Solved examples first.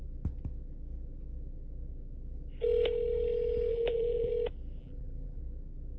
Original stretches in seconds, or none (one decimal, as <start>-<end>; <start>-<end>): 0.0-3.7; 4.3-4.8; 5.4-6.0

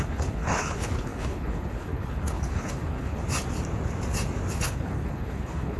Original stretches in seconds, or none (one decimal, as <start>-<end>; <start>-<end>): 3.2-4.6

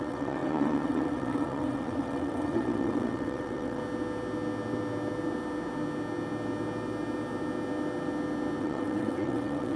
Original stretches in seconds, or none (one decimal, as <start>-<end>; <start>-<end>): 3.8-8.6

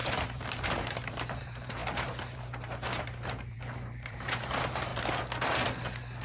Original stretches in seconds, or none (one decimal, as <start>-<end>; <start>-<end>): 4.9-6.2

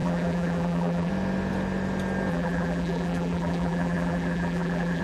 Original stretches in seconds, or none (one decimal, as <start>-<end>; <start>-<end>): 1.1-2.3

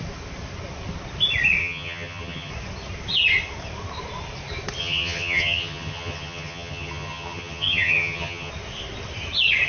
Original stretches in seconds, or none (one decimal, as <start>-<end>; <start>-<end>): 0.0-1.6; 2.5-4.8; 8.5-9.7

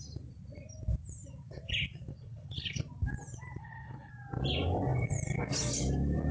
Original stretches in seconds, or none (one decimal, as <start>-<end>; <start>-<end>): 0.0-2.1; 2.8-3.6; 4.1-6.3

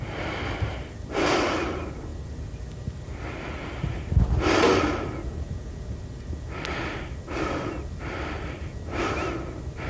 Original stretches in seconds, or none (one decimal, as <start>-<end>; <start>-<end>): 0.0-9.9